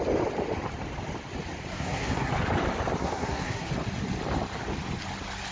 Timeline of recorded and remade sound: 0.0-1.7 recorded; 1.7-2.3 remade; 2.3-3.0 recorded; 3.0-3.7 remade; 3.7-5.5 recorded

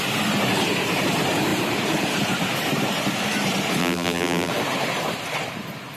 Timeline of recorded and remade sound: 0.0-3.8 recorded; 3.8-4.5 remade; 4.5-6.0 recorded

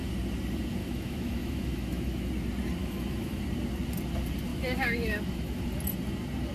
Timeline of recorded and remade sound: 0.0-0.8 recorded; 0.8-2.3 remade; 2.3-2.8 recorded; 2.8-3.4 remade; 3.4-4.5 recorded; 4.5-5.6 remade; 5.6-6.5 recorded

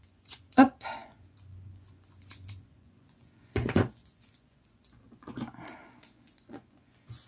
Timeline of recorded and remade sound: 0.0-7.3 remade